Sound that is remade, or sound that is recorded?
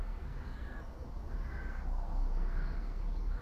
remade